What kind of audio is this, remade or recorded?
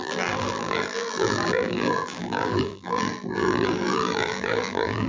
remade